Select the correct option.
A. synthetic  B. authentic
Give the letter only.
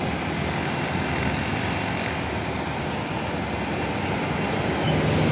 B